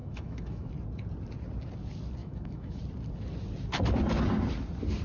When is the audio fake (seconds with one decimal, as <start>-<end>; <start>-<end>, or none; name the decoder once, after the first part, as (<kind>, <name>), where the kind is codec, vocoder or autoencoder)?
0.0-0.7 (autoencoder, DAC-VAE); 2.2-2.8